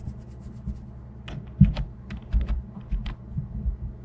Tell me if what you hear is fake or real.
real